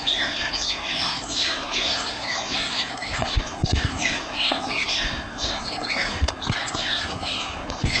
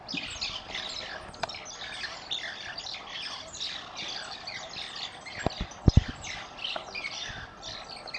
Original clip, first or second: second